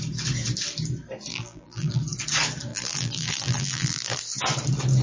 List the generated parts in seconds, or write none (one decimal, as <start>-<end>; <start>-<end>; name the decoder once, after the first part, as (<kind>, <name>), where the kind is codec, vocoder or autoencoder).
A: 1.3-2.0 (vocoder, BigVGAN v2); 2.7-4.2

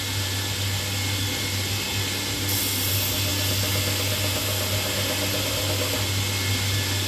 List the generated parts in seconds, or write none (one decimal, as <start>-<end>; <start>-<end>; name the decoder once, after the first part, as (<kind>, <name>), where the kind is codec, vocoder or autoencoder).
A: none

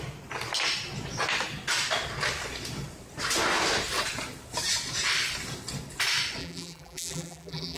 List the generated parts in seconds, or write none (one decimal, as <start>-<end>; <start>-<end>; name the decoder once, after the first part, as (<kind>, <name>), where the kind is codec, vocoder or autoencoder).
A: 6.4-7.8 (vocoder, BigVGAN v2)

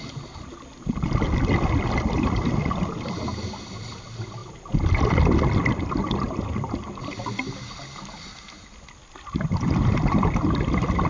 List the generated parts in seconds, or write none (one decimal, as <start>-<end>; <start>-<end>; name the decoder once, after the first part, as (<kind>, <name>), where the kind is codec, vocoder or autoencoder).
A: none

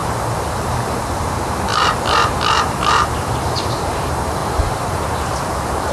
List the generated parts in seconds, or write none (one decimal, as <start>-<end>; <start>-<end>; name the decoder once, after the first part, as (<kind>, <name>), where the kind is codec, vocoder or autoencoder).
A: 0.6-1.7 (vocoder, BigVGAN v2); 3.1-5.9